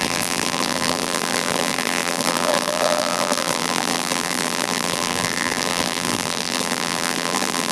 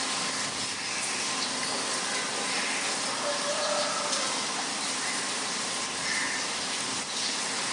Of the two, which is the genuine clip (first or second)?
second